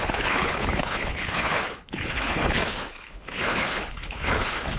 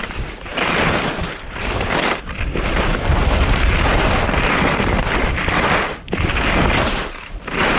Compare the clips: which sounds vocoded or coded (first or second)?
first